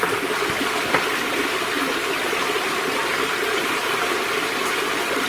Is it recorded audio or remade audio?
recorded